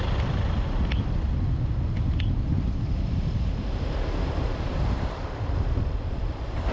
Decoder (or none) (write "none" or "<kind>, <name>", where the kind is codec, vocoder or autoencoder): none